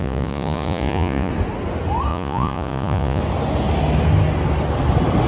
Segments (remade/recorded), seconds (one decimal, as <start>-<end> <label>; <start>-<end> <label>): 0.0-1.3 remade; 1.3-2.1 recorded; 2.1-3.2 remade; 3.2-5.3 recorded